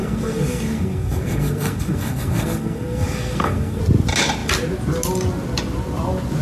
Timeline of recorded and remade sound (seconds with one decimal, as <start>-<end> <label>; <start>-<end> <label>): 0.0-3.8 remade; 3.8-6.4 recorded